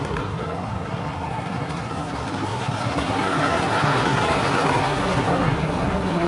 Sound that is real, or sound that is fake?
fake